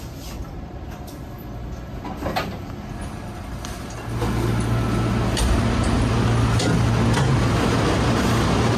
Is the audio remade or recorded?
recorded